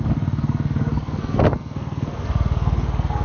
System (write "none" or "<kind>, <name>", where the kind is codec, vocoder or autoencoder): codec, SNAC